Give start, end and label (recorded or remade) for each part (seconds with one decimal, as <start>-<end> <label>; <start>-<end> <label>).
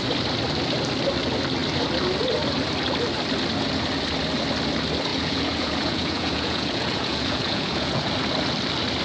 0.0-5.1 recorded; 5.1-8.1 remade; 8.1-9.0 recorded